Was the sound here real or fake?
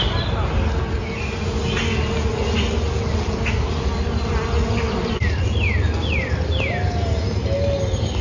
real